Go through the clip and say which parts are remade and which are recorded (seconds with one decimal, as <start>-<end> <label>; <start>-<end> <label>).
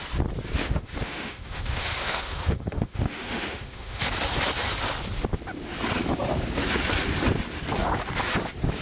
0.0-0.6 recorded; 0.6-4.0 remade; 4.0-8.8 recorded